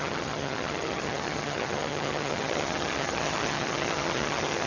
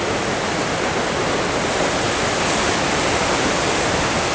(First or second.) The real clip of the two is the second